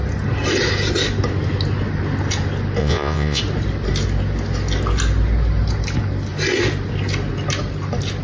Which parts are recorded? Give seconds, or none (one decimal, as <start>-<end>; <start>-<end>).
0.0-2.8; 3.4-8.2